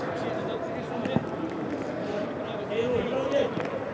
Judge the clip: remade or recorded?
recorded